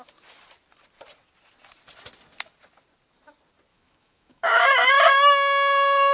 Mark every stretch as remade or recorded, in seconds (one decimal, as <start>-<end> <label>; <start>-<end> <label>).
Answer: 0.0-3.7 recorded; 3.7-4.6 remade; 4.6-6.1 recorded

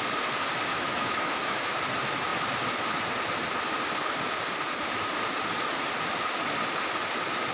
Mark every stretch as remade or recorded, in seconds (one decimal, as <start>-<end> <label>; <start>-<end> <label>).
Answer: 0.0-0.7 recorded; 0.7-1.7 remade; 1.7-7.5 recorded

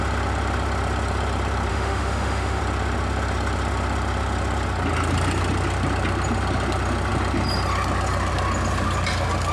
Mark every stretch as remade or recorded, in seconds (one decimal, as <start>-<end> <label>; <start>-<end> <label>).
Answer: 0.0-1.7 recorded; 1.7-2.6 remade; 2.6-9.5 recorded

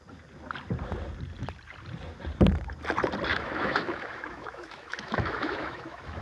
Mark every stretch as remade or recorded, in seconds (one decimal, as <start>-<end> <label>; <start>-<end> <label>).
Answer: 0.0-3.3 recorded; 3.3-6.2 remade

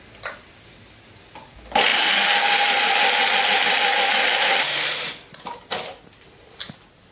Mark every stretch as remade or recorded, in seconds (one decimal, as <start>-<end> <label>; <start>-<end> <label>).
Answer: 0.0-7.1 recorded

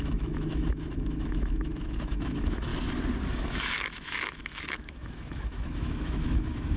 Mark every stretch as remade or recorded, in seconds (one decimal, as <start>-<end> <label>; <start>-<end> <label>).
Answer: 0.0-2.7 remade; 2.7-3.3 recorded; 3.3-6.8 remade

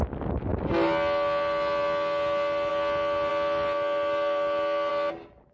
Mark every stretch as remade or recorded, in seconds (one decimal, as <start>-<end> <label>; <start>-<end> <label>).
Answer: 0.0-5.5 recorded